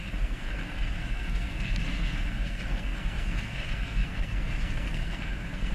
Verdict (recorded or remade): remade